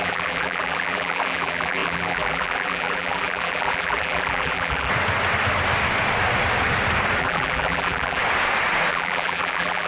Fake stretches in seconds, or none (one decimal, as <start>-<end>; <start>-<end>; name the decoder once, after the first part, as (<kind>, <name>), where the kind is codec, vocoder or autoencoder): 0.0-4.9 (vocoder, BigVGAN v2); 7.2-8.2; 8.9-9.9